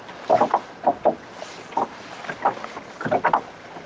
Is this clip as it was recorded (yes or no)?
yes